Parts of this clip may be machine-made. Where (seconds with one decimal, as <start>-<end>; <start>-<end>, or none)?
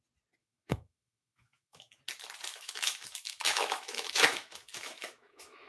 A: 0.4-2.0; 2.5-5.7